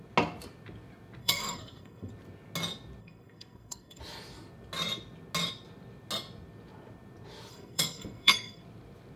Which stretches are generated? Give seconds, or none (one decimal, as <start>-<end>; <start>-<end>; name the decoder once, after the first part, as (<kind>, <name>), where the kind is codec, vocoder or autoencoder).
1.2-2.1 (codec, SNAC); 3.0-4.0; 7.5-8.6